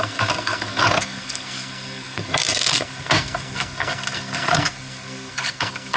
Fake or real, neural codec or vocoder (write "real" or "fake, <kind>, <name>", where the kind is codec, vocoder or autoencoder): fake, codec, SNAC